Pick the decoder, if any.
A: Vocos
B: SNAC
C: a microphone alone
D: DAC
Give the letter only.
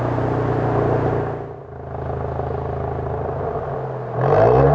C